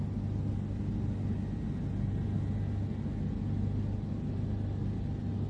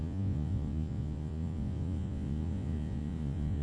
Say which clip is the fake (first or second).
second